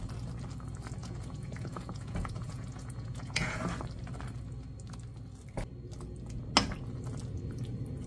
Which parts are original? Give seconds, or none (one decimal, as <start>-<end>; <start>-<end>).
0.0-1.0; 3.6-8.1